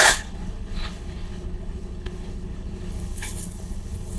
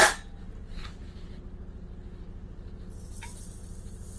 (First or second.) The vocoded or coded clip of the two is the first